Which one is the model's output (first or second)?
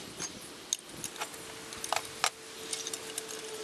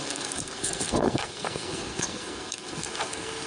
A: second